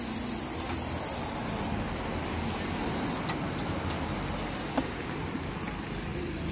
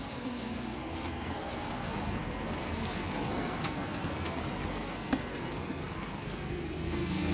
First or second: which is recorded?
first